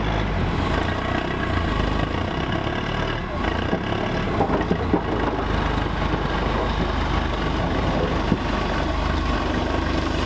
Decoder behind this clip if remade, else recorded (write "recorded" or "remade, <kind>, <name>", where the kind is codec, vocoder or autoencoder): recorded